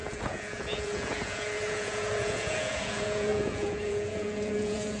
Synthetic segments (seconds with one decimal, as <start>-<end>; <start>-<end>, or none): 0.0-5.0